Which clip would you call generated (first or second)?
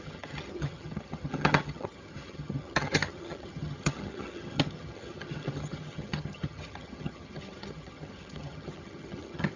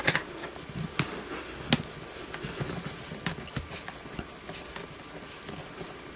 first